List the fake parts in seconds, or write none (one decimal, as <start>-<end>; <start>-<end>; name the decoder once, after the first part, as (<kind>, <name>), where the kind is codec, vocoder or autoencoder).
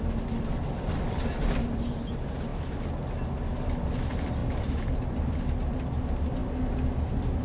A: none